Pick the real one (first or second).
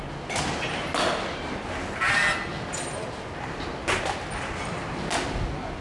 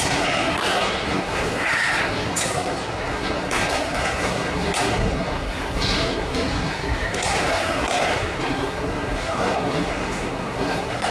first